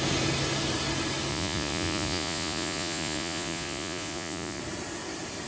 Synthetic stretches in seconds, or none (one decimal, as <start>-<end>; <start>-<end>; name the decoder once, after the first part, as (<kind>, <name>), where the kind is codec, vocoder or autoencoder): 1.3-4.6 (vocoder, Vocos)